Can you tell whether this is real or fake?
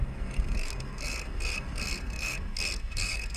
fake